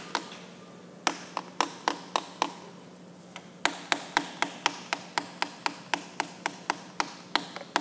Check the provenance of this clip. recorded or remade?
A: recorded